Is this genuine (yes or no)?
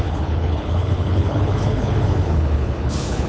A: no